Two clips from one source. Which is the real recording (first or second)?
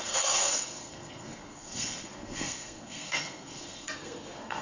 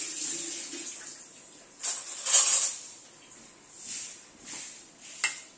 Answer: second